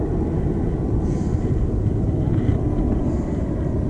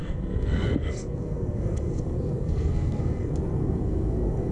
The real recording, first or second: first